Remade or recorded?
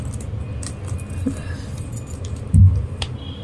recorded